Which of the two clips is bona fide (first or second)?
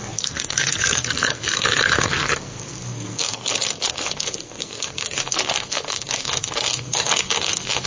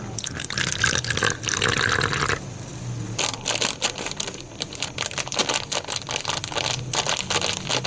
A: second